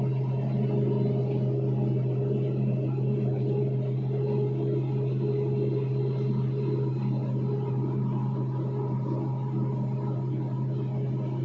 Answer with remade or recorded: recorded